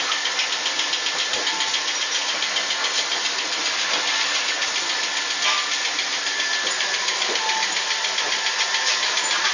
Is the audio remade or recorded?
recorded